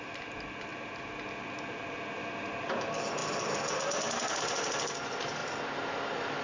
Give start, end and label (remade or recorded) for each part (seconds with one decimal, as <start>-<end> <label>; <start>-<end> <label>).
0.0-6.4 recorded